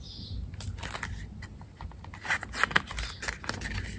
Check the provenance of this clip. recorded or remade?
recorded